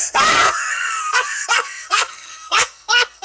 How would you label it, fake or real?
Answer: fake